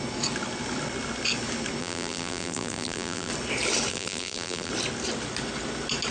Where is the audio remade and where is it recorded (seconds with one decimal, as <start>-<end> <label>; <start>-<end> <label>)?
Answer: 0.0-1.8 recorded; 1.8-3.3 remade; 3.3-3.9 recorded; 3.9-4.7 remade; 4.7-6.1 recorded